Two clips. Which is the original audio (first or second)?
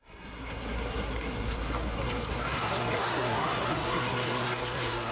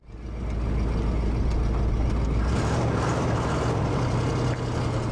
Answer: second